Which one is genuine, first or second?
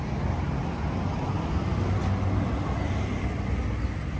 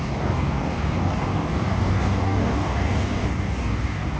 first